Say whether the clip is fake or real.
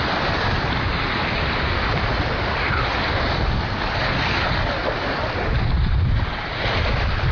real